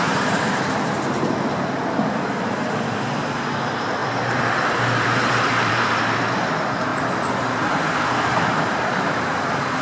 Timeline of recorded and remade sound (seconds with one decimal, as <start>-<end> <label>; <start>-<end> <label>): 0.0-6.9 remade; 6.9-8.6 recorded; 8.6-9.8 remade